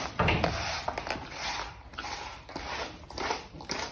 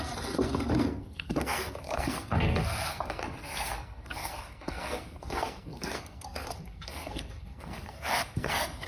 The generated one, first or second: second